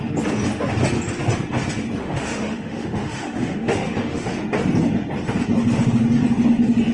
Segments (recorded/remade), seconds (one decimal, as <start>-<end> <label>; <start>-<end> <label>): 0.0-2.0 recorded; 2.0-4.3 remade; 4.3-6.9 recorded